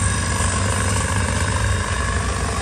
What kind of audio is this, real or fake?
real